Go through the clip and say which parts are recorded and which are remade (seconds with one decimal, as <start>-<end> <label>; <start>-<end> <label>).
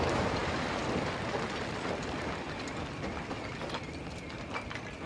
0.0-5.1 recorded